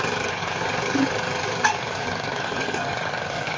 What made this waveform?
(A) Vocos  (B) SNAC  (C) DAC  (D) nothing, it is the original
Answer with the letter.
C